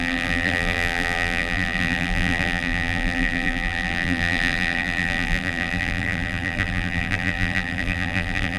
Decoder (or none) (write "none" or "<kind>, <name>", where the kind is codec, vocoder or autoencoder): vocoder, BigVGAN v2